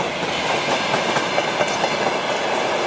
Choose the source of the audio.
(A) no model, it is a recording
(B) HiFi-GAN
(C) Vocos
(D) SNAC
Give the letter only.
A